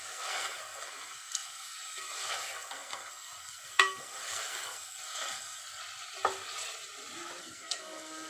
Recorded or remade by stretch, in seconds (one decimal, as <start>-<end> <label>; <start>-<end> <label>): 0.0-5.8 remade; 5.8-7.4 recorded; 7.4-8.3 remade